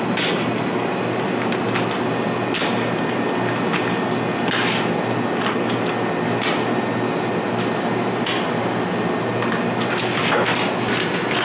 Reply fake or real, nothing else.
real